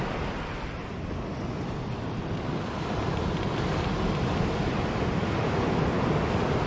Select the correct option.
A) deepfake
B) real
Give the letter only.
B